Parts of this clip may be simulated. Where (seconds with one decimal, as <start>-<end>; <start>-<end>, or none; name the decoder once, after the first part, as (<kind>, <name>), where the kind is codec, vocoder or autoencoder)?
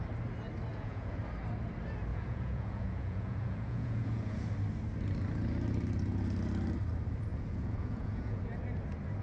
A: 0.7-1.2 (vocoder, Vocos); 2.1-4.5; 7.3-8.4